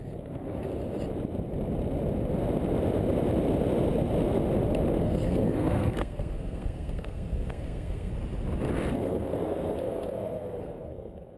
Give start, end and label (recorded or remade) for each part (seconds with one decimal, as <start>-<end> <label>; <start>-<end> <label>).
0.0-0.7 remade; 0.7-5.0 recorded; 5.0-8.1 remade; 8.1-8.9 recorded; 8.9-11.4 remade